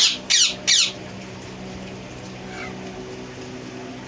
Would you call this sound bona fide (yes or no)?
yes